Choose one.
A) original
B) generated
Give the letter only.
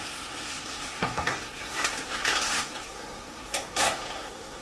B